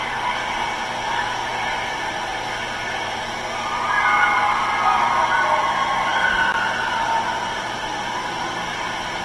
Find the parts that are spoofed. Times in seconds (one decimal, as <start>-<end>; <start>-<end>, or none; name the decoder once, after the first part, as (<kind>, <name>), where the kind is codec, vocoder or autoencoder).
none